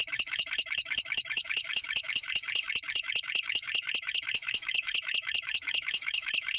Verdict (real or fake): fake